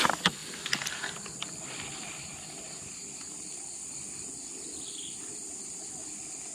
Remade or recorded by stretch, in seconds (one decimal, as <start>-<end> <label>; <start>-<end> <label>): 0.0-6.5 recorded